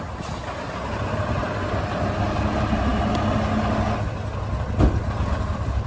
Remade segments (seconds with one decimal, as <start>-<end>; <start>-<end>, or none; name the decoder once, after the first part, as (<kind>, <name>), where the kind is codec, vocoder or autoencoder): none